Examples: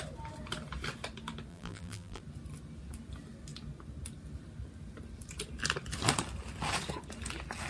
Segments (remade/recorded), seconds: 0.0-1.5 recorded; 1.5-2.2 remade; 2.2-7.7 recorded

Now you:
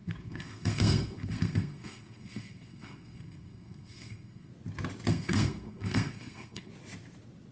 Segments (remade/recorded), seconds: 0.0-4.5 remade; 4.5-5.1 recorded; 5.1-6.7 remade; 6.7-7.5 recorded

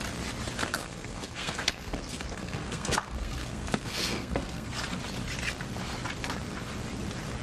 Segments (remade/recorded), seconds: 0.0-0.6 recorded; 0.6-4.8 remade; 4.8-7.4 recorded